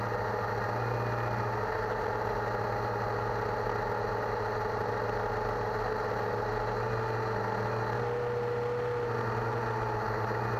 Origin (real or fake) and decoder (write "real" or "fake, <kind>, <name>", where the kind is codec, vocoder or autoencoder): real